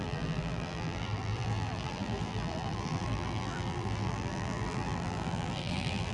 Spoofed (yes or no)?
yes